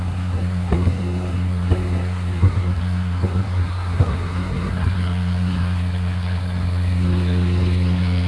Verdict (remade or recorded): remade